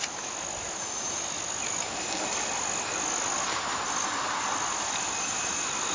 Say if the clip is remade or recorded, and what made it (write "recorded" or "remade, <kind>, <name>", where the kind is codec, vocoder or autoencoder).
recorded